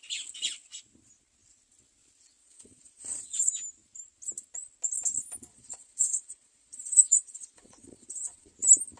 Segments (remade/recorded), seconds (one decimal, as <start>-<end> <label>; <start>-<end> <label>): 0.0-2.4 recorded; 2.4-3.5 remade; 3.5-5.5 recorded; 5.5-8.5 remade; 8.5-9.0 recorded